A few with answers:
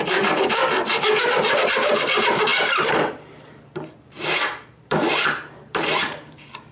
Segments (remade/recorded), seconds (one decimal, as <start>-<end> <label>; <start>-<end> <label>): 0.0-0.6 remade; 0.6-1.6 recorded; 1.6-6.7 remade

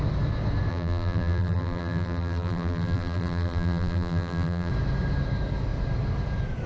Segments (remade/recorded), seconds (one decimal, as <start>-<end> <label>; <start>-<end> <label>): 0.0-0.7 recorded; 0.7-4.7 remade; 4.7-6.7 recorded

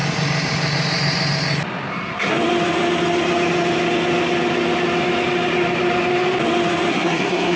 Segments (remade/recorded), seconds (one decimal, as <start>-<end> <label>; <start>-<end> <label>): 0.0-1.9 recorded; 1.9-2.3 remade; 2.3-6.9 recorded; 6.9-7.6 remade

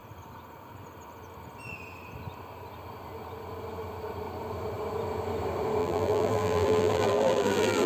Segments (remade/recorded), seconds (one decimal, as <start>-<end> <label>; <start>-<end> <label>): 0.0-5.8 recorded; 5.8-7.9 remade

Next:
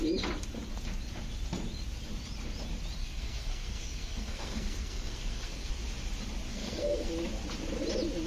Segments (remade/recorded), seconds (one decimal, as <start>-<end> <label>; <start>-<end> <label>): 0.0-3.0 recorded; 3.0-5.7 remade; 5.7-6.5 recorded; 6.5-7.1 remade; 7.1-8.3 recorded